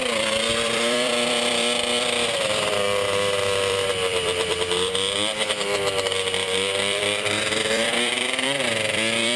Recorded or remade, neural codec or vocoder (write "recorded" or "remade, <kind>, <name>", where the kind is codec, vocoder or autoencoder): remade, vocoder, BigVGAN v2